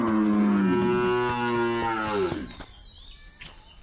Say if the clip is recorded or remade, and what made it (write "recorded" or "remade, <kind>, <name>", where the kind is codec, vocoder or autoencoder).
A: recorded